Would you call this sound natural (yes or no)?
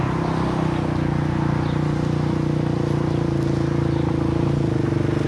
yes